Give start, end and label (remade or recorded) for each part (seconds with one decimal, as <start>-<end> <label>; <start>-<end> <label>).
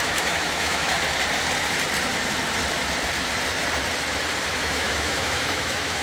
0.0-0.9 remade; 0.9-4.5 recorded; 4.5-6.0 remade